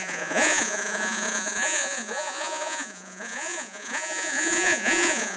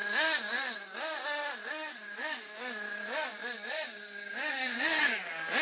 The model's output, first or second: first